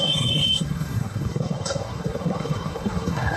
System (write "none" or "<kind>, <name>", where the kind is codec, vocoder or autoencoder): codec, SNAC